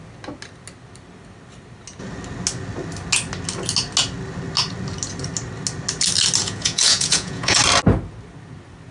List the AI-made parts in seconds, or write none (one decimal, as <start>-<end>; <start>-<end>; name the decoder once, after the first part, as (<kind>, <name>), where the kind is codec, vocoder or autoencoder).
6.4-7.6 (vocoder, Vocos)